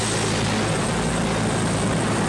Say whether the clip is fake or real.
real